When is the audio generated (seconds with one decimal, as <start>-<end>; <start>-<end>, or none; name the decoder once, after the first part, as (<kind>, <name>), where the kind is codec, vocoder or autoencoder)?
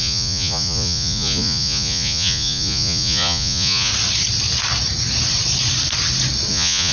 0.0-3.9 (vocoder, Vocos); 6.5-6.9